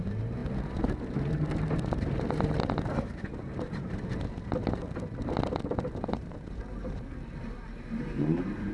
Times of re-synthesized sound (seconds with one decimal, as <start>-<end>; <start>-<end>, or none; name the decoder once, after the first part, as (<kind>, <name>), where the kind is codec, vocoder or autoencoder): 0.0-0.4 (vocoder, BigVGAN v2); 2.6-4.6; 6.1-8.7